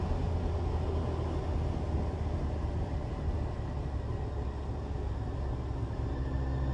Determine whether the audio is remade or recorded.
recorded